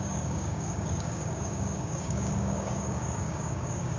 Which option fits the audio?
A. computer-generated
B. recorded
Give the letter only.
A